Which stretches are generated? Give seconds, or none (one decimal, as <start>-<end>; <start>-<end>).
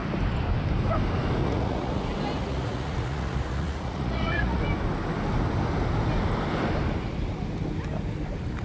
1.4-2.0; 2.4-4.6